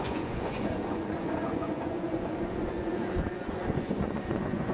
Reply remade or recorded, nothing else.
remade